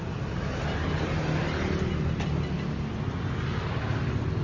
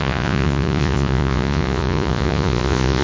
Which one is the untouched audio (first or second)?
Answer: first